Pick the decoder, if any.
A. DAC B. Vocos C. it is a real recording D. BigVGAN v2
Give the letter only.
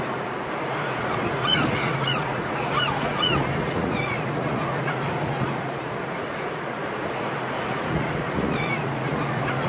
B